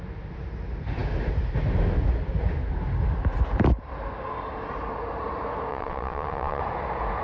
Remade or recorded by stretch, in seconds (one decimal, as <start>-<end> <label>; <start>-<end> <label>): 0.0-5.7 recorded; 5.7-6.6 remade; 6.6-7.2 recorded